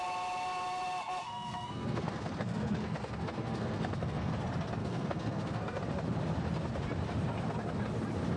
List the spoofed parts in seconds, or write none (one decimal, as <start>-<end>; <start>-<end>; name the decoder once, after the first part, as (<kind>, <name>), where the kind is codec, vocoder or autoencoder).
1.2-4.3 (codec, SNAC); 4.8-5.8